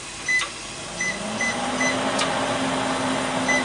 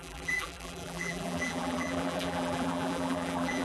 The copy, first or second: second